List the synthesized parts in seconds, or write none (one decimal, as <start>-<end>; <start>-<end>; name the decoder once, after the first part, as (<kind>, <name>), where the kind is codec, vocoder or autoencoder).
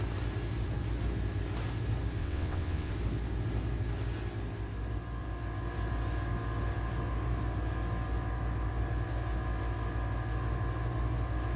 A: 2.2-2.9 (vocoder, WaveNeXt)